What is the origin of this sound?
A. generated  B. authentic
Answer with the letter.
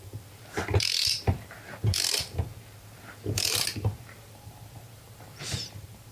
A